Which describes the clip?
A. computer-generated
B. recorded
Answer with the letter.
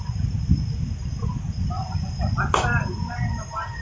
B